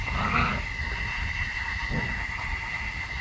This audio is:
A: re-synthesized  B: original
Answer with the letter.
B